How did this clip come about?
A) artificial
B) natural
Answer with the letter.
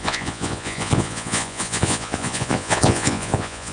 A